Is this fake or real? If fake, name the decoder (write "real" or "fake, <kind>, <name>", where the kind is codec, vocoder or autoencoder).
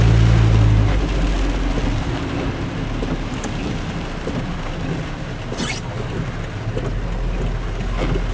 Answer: real